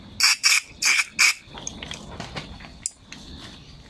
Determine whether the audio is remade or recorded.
recorded